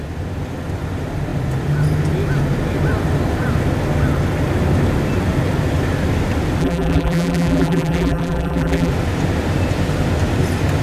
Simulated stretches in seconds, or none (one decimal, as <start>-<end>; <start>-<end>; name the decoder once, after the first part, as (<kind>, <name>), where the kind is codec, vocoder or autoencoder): 6.6-8.9 (vocoder, BigVGAN v2)

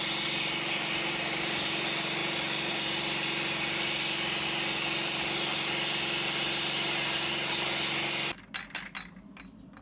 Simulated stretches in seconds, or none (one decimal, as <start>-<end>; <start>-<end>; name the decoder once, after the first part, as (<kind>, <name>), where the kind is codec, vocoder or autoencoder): none

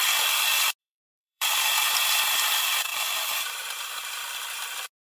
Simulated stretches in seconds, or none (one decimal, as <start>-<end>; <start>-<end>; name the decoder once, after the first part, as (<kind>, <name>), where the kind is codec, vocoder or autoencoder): 0.8-1.9 (vocoder, BigVGAN v2); 2.9-4.2

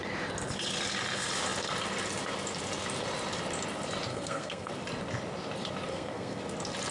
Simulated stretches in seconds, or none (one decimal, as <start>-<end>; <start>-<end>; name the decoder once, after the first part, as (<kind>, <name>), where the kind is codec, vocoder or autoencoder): 4.1-4.7 (codec, SNAC); 5.9-6.4

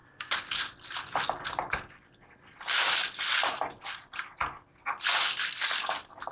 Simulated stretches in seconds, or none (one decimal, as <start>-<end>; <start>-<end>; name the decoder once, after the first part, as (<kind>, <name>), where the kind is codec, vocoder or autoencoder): none